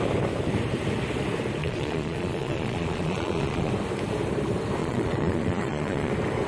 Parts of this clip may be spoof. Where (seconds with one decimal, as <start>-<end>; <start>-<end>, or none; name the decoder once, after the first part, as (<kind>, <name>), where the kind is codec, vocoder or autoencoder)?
1.6-3.7 (vocoder, Vocos); 4.8-6.1